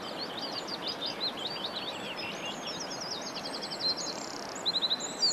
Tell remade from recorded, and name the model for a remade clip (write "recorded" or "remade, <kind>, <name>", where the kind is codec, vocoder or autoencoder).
recorded